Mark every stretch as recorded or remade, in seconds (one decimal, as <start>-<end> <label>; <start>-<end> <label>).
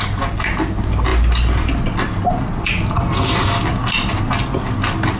0.0-5.2 recorded